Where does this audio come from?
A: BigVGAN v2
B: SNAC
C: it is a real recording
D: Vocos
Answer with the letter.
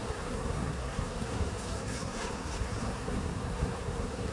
B